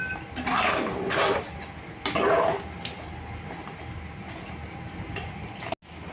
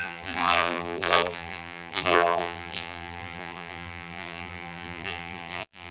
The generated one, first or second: second